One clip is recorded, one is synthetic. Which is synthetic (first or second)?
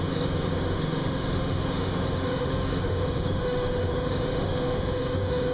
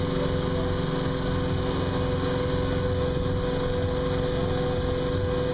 first